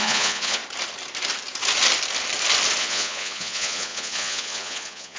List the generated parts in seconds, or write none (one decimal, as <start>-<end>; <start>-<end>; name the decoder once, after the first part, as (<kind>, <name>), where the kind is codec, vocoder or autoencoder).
0.0-0.6 (vocoder, Vocos); 2.8-5.2